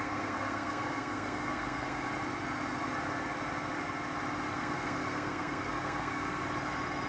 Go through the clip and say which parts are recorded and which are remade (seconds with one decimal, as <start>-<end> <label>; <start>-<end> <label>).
0.0-2.1 remade; 2.1-4.5 recorded; 4.5-6.4 remade; 6.4-7.1 recorded